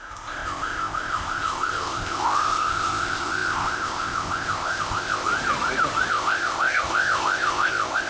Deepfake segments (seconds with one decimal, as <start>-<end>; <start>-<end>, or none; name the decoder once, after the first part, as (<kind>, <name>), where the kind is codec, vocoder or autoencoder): 0.0-5.3 (codec, ZipCodec); 6.1-8.1